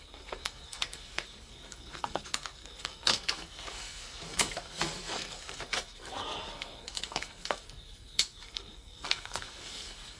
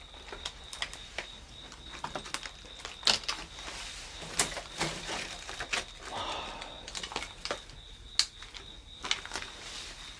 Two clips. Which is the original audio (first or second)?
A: second